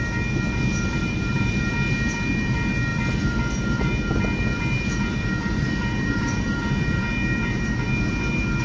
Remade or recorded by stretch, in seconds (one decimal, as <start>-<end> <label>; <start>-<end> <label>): 0.0-1.0 recorded; 1.0-1.7 remade; 1.7-2.9 recorded; 2.9-7.6 remade; 7.6-8.6 recorded